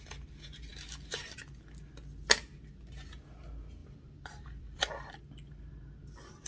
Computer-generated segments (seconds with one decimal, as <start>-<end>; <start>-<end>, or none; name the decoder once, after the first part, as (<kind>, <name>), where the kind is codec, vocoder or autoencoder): 3.8-5.2 (vocoder, BigVGAN v2)